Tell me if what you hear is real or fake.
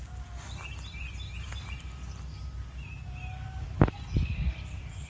real